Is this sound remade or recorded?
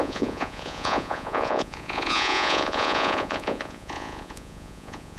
remade